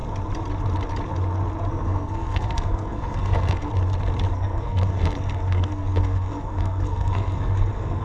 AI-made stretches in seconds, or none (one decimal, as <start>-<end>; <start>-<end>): 1.7-3.7; 4.3-8.0

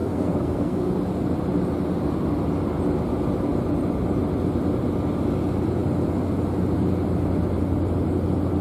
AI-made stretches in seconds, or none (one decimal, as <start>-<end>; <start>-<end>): 0.0-0.9